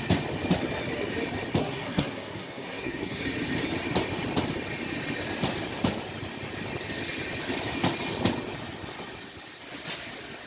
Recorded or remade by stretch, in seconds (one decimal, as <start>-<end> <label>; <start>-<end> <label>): 0.0-1.6 recorded; 1.6-3.2 remade; 3.2-10.5 recorded